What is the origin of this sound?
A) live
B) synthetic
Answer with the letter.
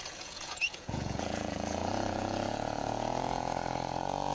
B